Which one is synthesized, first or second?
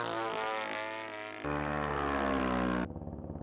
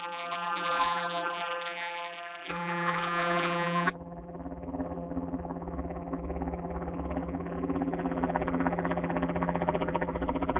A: second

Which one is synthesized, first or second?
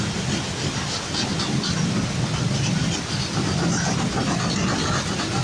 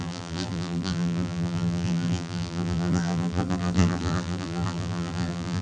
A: second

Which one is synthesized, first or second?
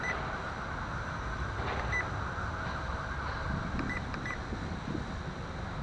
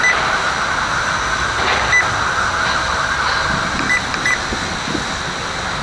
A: first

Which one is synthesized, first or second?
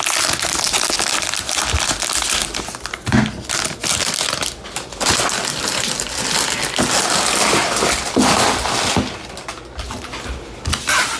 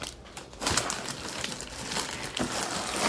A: second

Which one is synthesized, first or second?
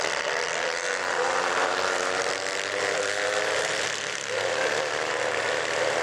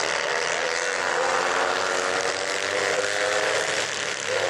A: first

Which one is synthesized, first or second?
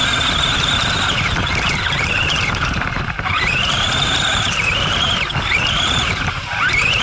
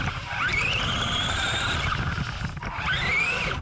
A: first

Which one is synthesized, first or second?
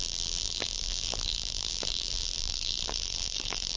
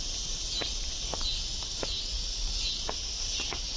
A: first